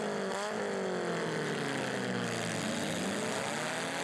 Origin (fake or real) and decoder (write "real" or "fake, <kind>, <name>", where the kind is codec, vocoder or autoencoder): real